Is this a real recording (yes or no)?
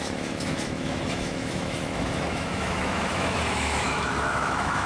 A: no